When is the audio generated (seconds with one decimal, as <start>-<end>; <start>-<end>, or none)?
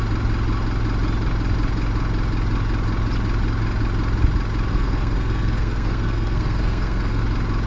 4.7-7.2